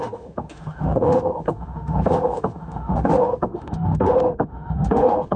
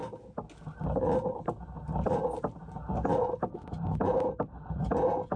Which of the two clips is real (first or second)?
second